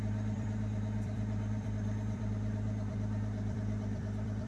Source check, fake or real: fake